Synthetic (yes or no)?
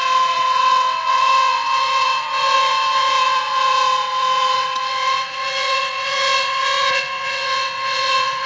yes